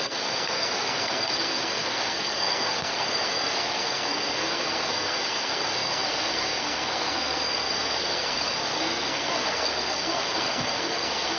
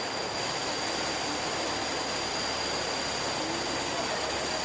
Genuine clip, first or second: second